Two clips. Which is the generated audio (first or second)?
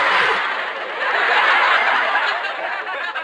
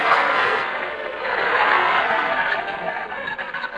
second